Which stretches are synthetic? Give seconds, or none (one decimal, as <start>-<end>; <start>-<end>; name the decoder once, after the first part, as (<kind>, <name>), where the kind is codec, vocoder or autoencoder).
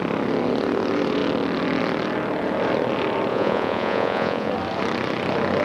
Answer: 3.3-4.5 (vocoder, Vocos)